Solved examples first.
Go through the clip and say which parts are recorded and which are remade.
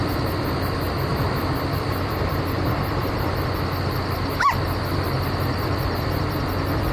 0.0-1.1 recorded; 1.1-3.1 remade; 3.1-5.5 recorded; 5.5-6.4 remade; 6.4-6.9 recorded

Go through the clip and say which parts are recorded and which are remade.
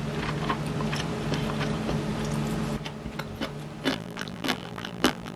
0.0-3.9 recorded; 3.9-5.4 remade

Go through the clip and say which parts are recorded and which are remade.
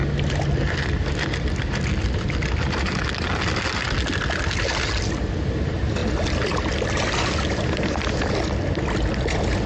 0.0-9.7 recorded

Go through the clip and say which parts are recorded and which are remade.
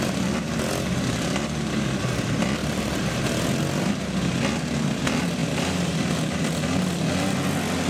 0.0-2.6 recorded; 2.6-3.2 remade; 3.2-5.4 recorded; 5.4-6.1 remade; 6.1-7.9 recorded